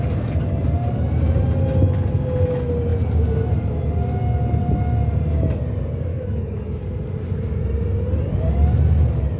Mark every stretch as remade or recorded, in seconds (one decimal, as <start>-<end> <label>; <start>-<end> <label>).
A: 0.0-6.1 recorded; 6.1-6.8 remade; 6.8-9.4 recorded